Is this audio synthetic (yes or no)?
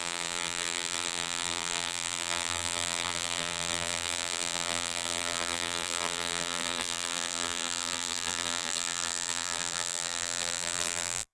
yes